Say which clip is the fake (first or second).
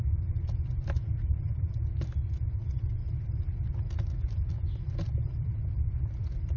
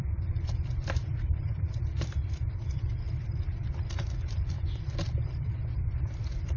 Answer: second